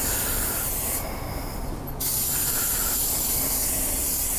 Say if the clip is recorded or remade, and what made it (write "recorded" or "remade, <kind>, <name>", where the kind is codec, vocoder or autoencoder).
recorded